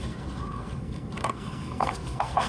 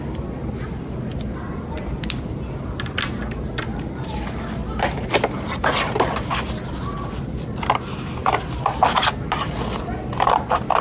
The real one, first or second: second